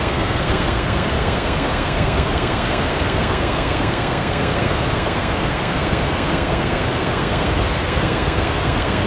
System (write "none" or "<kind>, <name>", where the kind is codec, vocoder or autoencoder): codec, SNAC